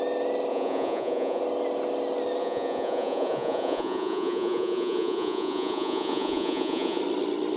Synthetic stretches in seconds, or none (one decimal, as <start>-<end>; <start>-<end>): 0.5-1.4; 2.4-7.0